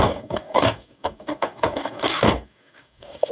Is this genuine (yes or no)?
no